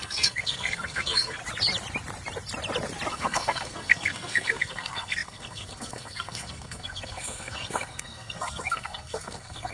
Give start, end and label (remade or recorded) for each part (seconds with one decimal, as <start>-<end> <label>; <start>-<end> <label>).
0.0-1.4 remade; 1.4-3.1 recorded; 3.1-9.7 remade